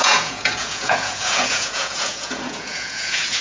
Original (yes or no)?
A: no